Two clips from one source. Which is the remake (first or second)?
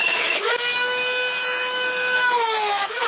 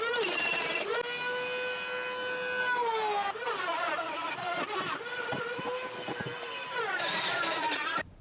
first